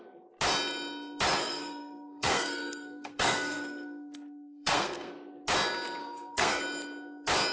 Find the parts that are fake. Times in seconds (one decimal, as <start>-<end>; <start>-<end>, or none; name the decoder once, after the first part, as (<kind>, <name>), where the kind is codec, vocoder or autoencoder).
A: 1.4-5.1 (codec, SNAC); 6.0-6.6